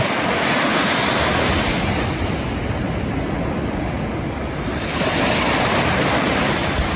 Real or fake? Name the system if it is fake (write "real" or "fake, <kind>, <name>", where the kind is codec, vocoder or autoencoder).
real